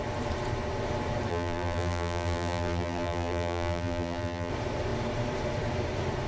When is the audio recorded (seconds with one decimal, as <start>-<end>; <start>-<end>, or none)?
0.0-1.3; 4.5-6.3